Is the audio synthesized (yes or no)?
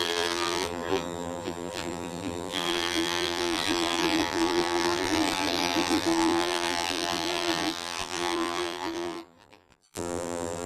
yes